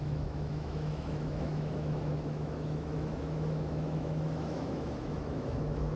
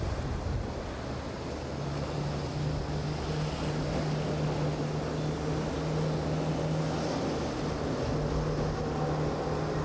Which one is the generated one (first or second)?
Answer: first